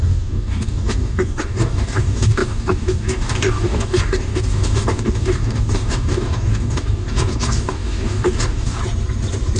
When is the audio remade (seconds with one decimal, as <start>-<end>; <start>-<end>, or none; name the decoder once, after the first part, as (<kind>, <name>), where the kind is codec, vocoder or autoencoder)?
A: 0.0-8.8 (codec, DAC)